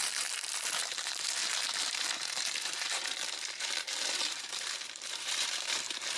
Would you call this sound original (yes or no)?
no